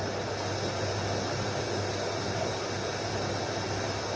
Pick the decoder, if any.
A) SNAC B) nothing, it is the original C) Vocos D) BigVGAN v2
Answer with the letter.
B